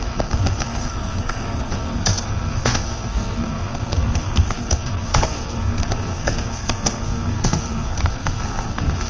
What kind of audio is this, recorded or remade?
remade